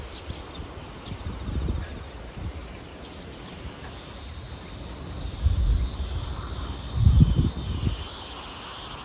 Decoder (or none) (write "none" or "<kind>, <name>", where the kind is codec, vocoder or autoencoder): none